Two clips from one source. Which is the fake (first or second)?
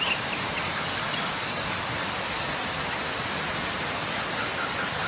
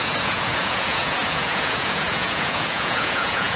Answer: second